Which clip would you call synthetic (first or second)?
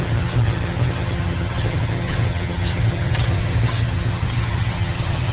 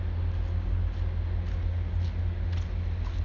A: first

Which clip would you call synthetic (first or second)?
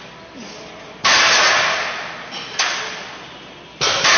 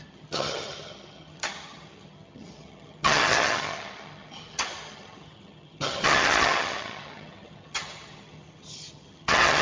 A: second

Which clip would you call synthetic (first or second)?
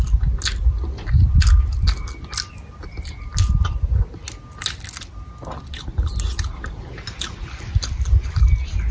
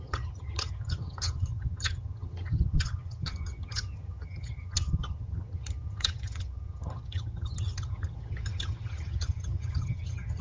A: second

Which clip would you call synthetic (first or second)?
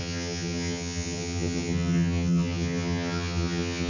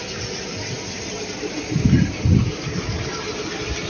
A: first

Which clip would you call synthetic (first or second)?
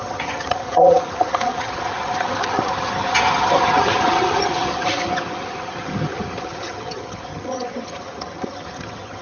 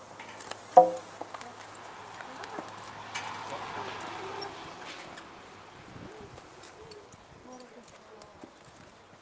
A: first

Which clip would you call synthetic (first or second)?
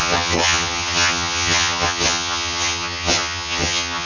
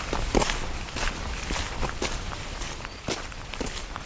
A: first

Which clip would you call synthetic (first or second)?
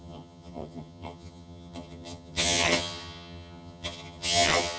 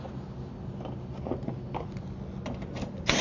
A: first